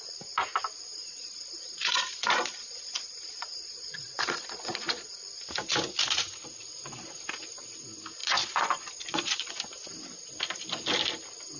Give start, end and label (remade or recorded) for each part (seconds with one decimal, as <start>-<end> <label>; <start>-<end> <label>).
0.0-0.9 recorded; 0.9-5.2 remade; 5.2-8.2 recorded; 8.2-9.5 remade; 9.5-11.6 recorded